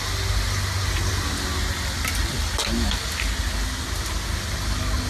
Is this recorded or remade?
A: recorded